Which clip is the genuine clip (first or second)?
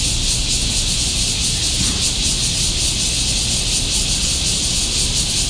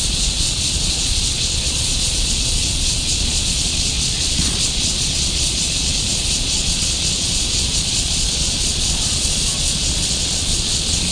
first